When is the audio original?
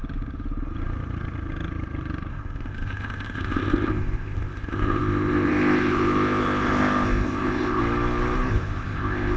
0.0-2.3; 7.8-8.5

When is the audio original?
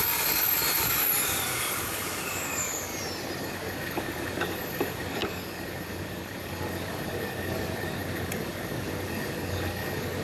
2.9-3.4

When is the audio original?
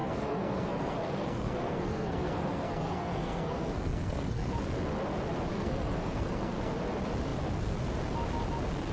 4.5-5.5; 6.7-8.9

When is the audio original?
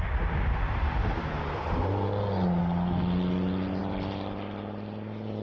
0.0-5.4